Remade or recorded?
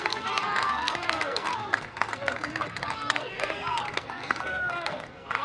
remade